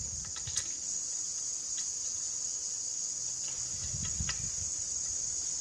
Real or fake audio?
real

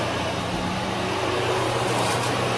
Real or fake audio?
fake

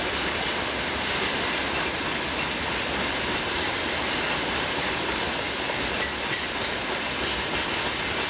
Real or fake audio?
real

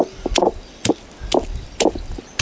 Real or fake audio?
real